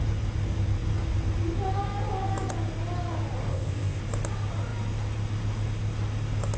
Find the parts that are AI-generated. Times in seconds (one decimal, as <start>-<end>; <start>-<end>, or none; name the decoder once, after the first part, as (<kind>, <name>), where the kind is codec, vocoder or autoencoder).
3.5-4.0 (codec, ZipCodec)